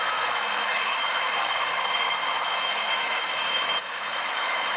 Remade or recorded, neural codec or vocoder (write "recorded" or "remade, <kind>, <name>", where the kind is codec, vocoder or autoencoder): remade, autoencoder, DAC-VAE